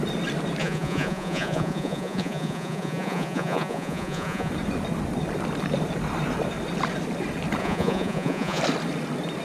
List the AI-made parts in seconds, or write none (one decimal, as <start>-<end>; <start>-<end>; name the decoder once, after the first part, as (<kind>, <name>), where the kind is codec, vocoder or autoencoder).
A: 0.6-4.5 (vocoder, Vocos); 7.6-8.6